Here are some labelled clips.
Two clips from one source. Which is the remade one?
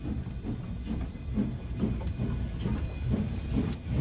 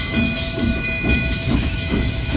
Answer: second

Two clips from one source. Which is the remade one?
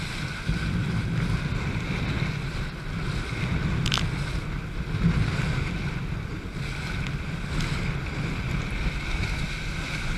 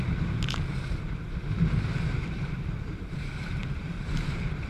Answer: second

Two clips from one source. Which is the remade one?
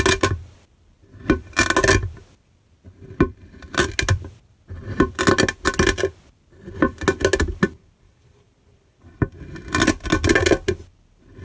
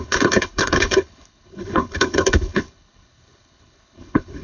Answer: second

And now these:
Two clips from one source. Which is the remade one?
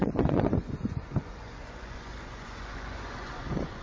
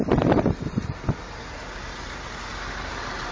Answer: first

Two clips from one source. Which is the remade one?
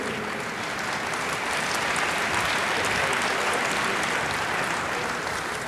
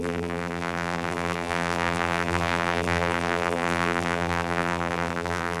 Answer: second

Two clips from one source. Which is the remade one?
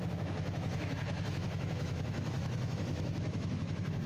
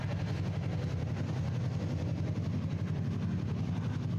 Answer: first